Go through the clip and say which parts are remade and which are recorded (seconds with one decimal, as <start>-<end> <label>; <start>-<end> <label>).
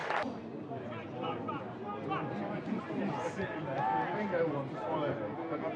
0.0-1.9 remade; 1.9-2.6 recorded; 2.6-3.6 remade; 3.6-5.8 recorded